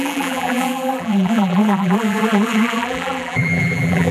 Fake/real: fake